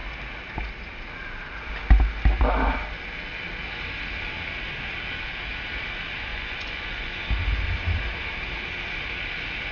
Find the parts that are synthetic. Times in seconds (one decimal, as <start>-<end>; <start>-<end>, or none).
6.3-7.2